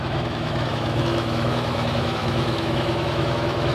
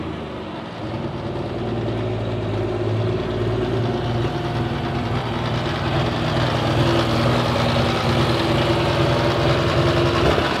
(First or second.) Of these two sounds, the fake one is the first